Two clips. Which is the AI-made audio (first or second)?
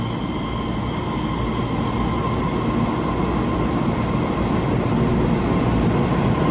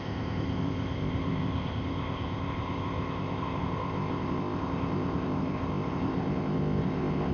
second